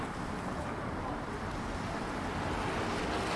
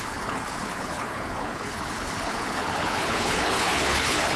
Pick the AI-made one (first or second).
second